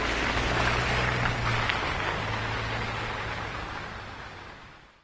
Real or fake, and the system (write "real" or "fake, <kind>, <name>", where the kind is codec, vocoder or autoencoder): real